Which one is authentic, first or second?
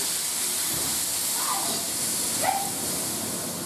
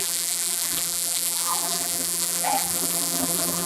first